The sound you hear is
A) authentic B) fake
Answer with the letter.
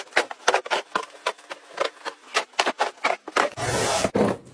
A